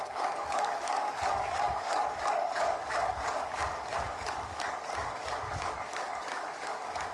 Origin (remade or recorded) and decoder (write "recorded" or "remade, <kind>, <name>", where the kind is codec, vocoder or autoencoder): remade, codec, DAC